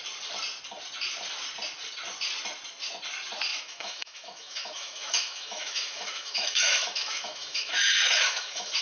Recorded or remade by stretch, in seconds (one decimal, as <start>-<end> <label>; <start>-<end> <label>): 0.0-3.5 recorded; 3.5-8.8 remade